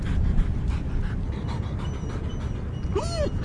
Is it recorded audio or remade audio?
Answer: recorded